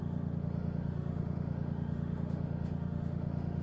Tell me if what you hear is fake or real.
fake